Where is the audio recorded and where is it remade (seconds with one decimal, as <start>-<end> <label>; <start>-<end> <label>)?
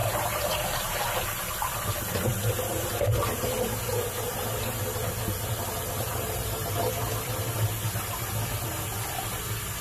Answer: 0.0-1.1 remade; 1.1-6.1 recorded; 6.1-6.9 remade; 6.9-9.8 recorded